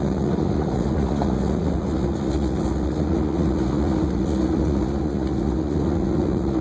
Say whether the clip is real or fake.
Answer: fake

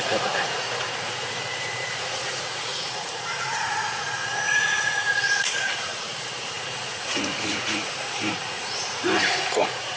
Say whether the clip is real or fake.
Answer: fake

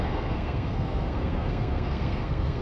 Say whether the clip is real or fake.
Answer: fake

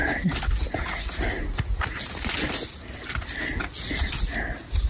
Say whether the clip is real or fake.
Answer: real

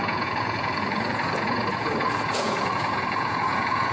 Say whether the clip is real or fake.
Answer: fake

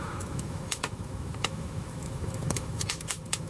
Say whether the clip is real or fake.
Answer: fake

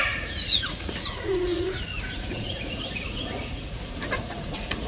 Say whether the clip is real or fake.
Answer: fake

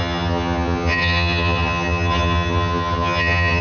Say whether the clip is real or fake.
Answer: fake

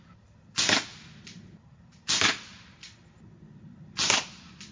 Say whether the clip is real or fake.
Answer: real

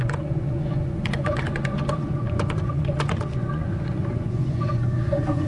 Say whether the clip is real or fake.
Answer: fake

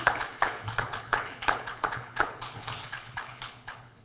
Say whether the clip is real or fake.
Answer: fake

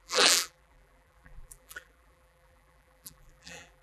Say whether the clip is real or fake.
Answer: fake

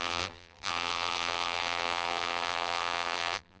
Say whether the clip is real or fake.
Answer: fake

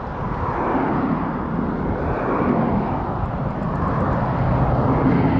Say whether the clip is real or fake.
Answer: real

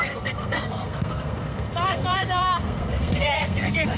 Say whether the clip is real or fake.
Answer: fake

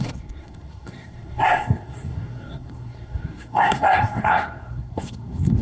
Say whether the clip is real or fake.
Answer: fake